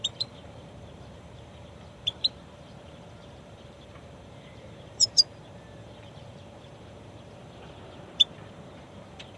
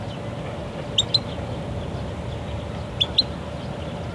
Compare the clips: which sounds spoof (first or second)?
first